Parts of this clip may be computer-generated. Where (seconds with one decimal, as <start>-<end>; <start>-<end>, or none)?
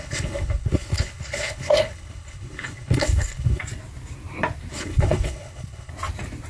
0.0-3.6; 4.7-5.9